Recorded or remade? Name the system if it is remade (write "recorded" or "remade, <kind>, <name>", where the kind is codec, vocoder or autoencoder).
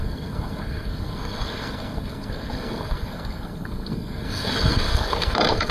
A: remade, codec, SNAC